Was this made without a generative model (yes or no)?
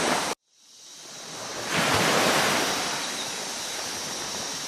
yes